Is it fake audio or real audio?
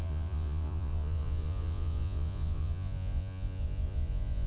fake